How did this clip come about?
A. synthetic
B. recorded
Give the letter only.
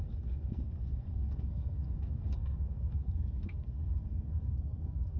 A